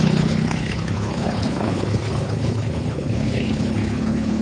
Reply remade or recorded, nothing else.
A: remade